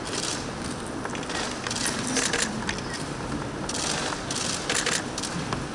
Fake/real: real